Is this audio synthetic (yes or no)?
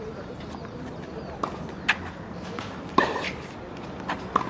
no